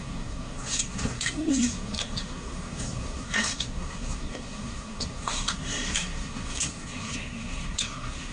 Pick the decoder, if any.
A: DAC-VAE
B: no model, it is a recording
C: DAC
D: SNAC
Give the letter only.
D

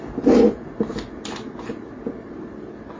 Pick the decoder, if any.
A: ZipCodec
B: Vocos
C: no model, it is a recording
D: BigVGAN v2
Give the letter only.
C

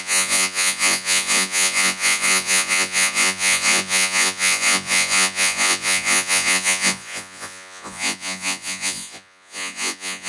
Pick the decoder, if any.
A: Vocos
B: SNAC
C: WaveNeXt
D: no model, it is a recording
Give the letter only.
A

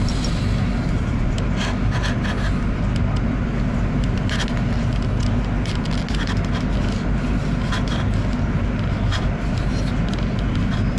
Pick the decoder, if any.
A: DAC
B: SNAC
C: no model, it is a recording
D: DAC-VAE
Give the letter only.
C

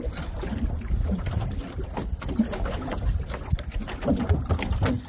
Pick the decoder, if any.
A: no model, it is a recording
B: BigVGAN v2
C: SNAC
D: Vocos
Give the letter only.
A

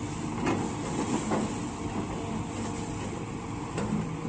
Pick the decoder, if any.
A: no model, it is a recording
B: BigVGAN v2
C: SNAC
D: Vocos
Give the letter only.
A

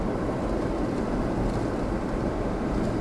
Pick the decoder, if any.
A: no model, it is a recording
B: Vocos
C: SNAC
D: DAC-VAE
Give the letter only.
A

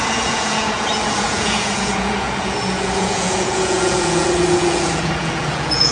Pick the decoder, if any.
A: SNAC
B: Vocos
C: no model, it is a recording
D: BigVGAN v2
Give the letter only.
B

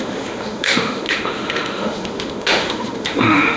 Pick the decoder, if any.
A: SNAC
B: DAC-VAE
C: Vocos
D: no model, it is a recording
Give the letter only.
B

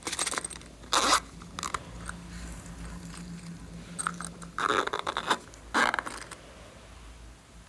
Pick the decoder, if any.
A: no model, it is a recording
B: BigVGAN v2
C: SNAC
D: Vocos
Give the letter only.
A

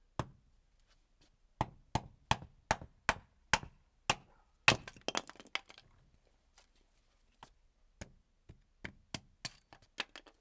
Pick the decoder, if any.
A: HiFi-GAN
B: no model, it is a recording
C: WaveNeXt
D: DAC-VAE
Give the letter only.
B